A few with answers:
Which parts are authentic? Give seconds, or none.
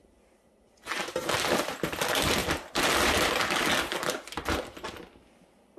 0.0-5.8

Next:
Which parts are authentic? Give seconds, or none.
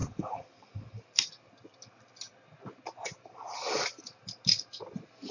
1.3-3.0; 4.7-5.3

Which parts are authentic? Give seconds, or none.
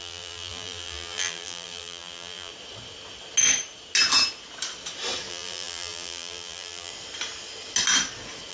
2.5-5.3; 6.9-8.5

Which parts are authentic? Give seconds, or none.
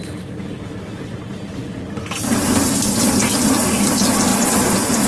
0.0-3.1; 4.3-5.1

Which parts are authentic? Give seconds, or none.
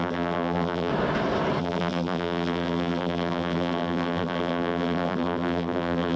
0.9-1.6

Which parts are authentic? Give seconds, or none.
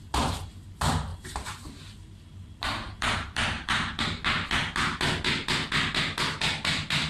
0.0-1.1; 4.0-7.1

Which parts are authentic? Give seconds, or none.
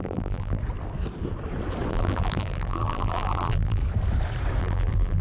0.6-1.9; 3.8-4.6